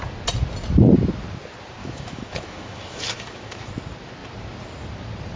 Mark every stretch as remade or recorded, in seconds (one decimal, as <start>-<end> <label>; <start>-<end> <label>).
0.0-1.8 recorded; 1.8-3.7 remade; 3.7-5.4 recorded